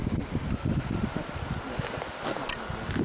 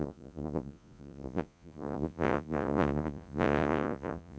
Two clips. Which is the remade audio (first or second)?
second